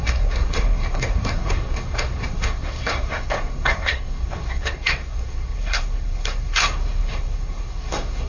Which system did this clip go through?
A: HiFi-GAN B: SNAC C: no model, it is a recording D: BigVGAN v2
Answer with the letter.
B